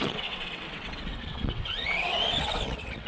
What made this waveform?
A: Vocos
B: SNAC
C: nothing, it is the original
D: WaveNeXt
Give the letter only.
D